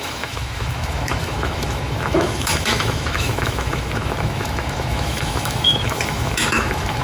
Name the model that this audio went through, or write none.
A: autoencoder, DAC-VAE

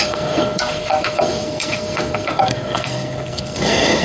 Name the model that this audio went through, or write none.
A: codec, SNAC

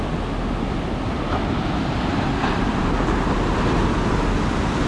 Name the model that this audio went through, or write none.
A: none